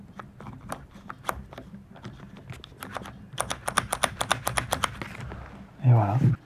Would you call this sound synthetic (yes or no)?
no